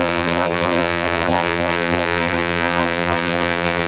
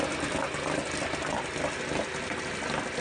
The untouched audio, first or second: second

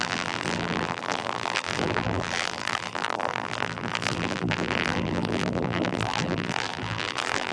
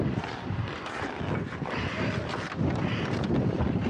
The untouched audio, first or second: second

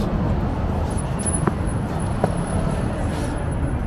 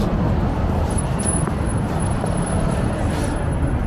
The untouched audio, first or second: first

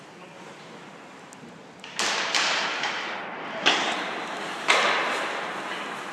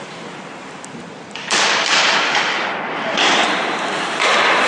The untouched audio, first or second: first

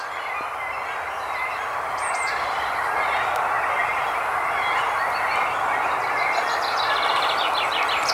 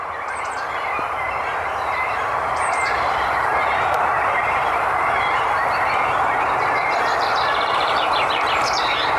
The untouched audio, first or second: first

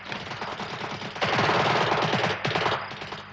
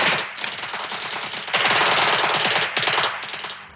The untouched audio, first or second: second